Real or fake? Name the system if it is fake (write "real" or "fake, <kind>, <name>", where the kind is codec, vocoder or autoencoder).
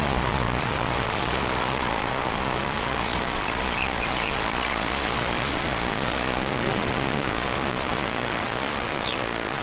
fake, vocoder, Vocos